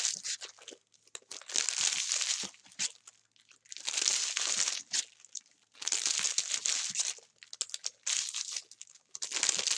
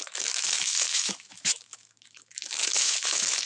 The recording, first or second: first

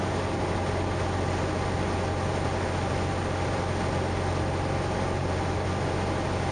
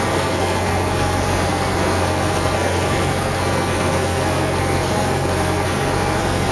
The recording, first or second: first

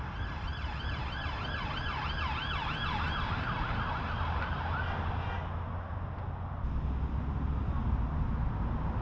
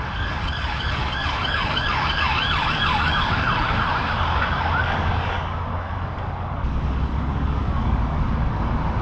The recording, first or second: first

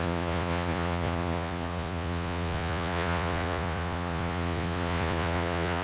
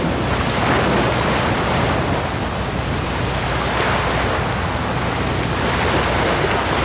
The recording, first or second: second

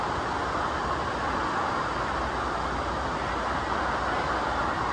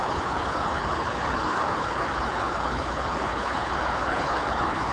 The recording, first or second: first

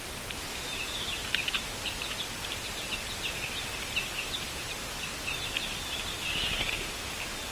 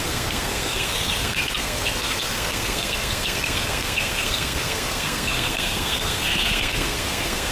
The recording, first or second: first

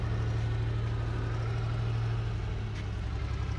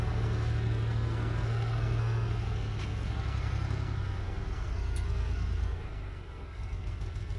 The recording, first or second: first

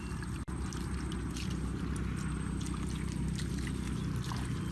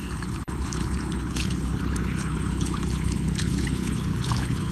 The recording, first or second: first